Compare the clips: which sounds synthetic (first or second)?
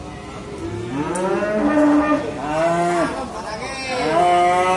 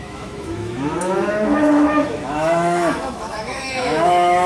second